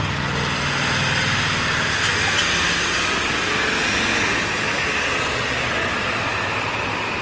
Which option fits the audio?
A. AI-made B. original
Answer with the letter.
B